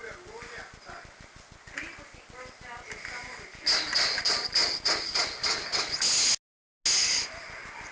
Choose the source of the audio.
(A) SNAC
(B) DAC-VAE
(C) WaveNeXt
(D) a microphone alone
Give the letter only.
D